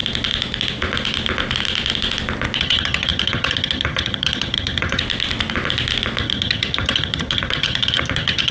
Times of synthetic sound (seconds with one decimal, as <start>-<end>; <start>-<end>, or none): 2.6-5.0; 6.2-8.5